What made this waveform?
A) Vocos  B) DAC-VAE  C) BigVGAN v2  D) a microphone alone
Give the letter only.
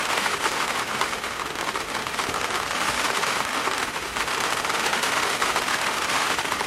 B